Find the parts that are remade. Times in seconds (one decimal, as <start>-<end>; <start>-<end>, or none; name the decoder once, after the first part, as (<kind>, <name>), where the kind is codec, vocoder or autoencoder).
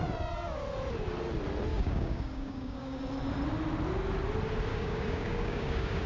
1.7-3.0 (codec, DAC); 4.7-6.1